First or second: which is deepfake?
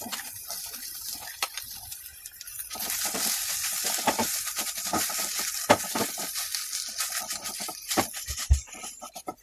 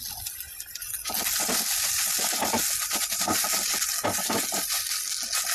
first